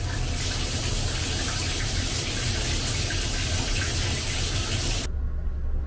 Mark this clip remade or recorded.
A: recorded